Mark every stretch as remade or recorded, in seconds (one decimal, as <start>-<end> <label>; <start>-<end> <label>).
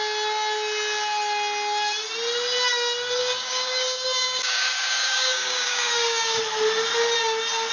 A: 0.0-3.2 recorded; 3.2-6.4 remade; 6.4-7.7 recorded